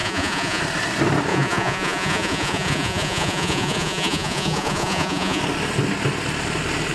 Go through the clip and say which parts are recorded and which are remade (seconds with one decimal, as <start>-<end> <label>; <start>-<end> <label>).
0.0-0.6 remade; 0.6-1.3 recorded; 1.3-5.4 remade; 5.4-6.9 recorded